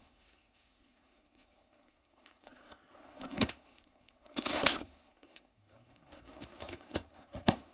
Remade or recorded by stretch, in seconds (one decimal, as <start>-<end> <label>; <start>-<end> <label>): 0.0-7.7 remade